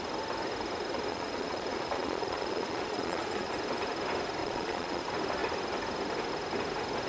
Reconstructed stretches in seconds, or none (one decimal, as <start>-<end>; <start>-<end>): 1.1-3.5; 4.4-5.0